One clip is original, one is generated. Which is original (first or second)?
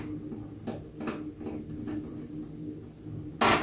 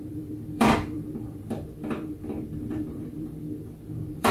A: first